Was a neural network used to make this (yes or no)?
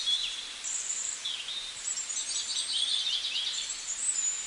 yes